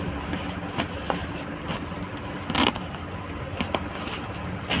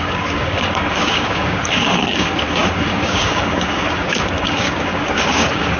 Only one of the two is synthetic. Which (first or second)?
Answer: second